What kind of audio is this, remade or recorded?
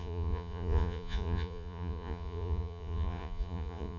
remade